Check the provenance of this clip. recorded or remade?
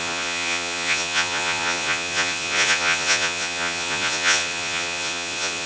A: remade